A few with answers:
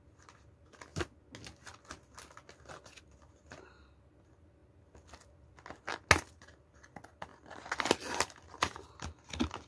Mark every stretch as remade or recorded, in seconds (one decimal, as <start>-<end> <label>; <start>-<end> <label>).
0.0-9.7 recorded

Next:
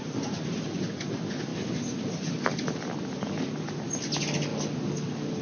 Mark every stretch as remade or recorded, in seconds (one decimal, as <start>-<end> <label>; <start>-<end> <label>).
0.0-5.4 recorded

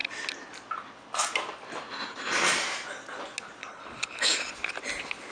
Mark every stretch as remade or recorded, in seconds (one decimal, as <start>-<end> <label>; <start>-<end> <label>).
0.0-3.6 recorded; 3.6-4.5 remade; 4.5-5.3 recorded

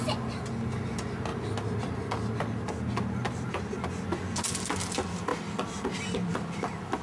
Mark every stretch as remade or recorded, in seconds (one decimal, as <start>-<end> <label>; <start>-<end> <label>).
0.0-7.0 recorded